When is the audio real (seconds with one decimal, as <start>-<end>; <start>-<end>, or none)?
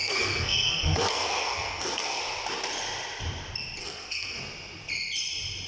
2.2-3.8; 4.4-5.7